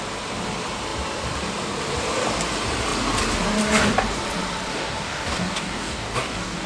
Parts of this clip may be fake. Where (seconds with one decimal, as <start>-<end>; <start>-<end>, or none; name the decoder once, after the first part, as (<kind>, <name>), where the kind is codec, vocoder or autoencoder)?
4.7-6.7 (codec, DAC)